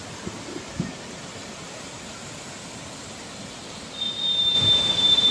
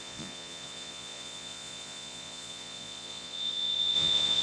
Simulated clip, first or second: second